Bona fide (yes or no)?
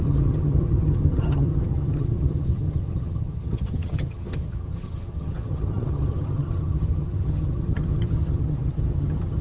no